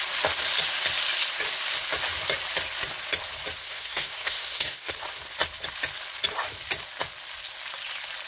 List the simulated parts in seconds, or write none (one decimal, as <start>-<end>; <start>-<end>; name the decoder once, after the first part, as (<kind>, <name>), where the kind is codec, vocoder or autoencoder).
3.6-4.9 (codec, SNAC)

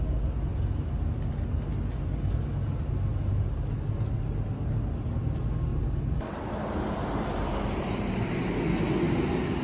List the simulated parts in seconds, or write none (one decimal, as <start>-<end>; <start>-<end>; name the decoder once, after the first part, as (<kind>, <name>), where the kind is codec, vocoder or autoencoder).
5.7-6.4 (vocoder, BigVGAN v2); 7.0-8.4

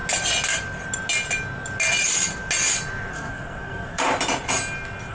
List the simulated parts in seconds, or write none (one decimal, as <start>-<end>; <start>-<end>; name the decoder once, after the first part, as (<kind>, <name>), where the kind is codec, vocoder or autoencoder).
3.1-4.0 (codec, SNAC)

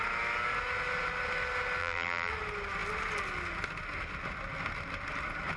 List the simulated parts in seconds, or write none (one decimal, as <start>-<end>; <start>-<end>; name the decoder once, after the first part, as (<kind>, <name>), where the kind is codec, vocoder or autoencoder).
1.8-2.3 (vocoder, BigVGAN v2)

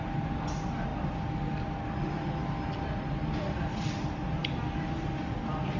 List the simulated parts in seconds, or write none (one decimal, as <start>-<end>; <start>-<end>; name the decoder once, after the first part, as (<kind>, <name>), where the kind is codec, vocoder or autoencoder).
none

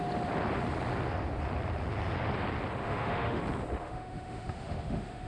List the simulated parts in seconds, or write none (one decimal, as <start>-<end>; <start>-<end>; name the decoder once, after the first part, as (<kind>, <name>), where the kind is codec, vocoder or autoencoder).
2.8-3.4 (autoencoder, DAC-VAE); 3.8-5.3

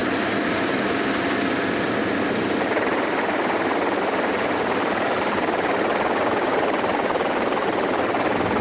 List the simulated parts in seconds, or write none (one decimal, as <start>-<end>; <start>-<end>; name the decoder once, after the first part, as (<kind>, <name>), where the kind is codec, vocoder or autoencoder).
none

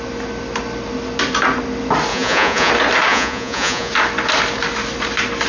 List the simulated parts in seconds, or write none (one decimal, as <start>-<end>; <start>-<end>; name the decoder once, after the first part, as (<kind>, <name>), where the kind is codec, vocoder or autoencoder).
2.1-2.7 (vocoder, Vocos); 3.1-3.9